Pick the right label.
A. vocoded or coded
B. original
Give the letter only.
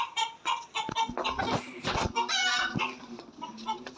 B